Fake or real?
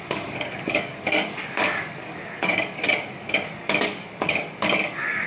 fake